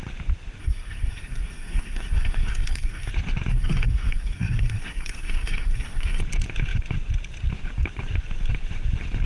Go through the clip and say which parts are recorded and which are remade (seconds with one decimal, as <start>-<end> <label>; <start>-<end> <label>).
0.0-0.6 recorded; 0.6-3.1 remade; 3.1-3.5 recorded; 3.5-6.2 remade; 6.2-9.3 recorded